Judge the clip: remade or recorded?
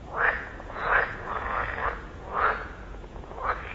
remade